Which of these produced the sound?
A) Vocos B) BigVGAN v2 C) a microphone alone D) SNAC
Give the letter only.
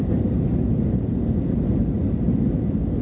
C